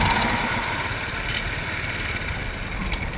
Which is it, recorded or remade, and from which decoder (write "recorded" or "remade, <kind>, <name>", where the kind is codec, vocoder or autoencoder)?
recorded